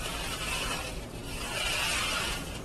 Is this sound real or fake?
real